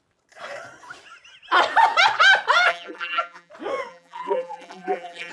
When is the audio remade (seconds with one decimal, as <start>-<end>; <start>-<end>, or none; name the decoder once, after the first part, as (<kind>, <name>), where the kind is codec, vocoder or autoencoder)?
2.7-3.5 (vocoder, BigVGAN v2); 3.9-5.3